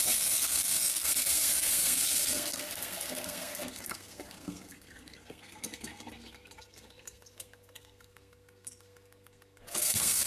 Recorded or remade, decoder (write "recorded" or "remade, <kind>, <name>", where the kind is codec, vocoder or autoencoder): remade, codec, SNAC